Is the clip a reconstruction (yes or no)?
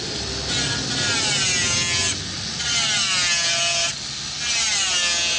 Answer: no